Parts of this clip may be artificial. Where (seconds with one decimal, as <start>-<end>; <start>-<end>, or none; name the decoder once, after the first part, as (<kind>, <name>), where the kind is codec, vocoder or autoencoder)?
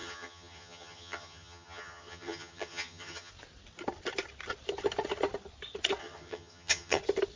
0.0-3.3 (vocoder, HiFi-GAN); 6.0-7.0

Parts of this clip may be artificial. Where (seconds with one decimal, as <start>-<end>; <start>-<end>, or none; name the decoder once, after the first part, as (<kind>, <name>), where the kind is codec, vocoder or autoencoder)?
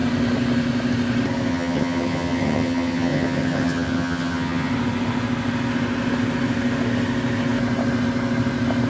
1.5-4.7 (vocoder, HiFi-GAN)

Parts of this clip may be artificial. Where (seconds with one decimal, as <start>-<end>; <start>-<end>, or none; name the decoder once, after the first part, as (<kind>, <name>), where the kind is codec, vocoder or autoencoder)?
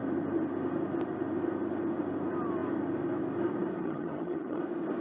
3.8-4.6 (vocoder, HiFi-GAN)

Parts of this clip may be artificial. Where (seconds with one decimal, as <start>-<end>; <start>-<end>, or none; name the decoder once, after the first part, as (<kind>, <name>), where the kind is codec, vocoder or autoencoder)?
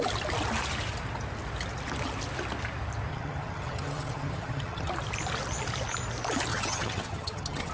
3.1-4.9 (vocoder, HiFi-GAN); 6.5-7.7